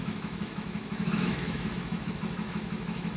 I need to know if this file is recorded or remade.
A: remade